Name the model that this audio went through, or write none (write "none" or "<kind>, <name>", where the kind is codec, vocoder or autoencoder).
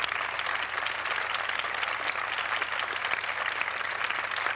none